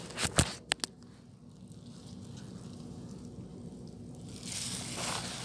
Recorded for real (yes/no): yes